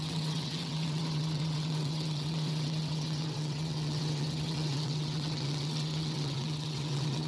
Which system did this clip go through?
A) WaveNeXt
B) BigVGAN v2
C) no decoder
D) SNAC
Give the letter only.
A